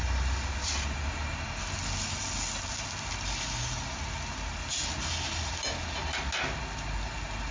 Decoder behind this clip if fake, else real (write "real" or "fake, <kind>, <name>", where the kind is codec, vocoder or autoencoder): real